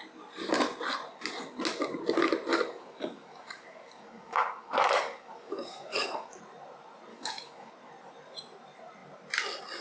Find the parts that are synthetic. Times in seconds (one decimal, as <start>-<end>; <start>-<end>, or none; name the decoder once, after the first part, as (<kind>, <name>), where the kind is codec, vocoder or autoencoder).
2.5-6.4 (codec, DAC); 7.1-7.7